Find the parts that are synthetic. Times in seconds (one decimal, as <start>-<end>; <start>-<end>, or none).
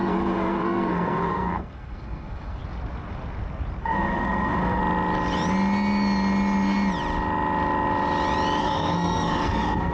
0.0-2.6; 3.8-4.8; 8.6-9.9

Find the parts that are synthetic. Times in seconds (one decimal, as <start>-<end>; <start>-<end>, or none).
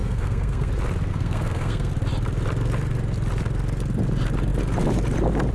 0.0-0.7; 1.1-1.9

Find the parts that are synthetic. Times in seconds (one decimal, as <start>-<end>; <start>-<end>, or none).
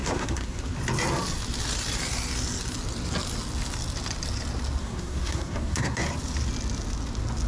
0.0-0.6; 4.8-6.0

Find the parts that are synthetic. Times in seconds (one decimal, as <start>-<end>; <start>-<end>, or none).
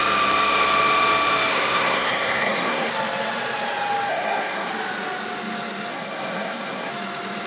1.5-2.9; 4.1-4.7; 5.9-6.9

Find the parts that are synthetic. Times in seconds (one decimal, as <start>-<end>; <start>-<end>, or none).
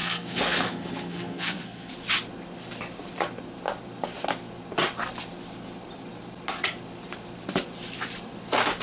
0.0-1.9